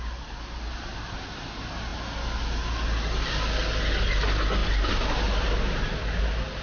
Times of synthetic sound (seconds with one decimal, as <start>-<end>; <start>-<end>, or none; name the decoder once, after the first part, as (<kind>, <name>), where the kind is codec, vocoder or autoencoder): none